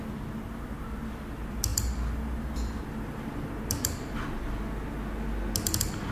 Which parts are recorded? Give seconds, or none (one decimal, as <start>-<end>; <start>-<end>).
0.0-1.7; 3.5-6.1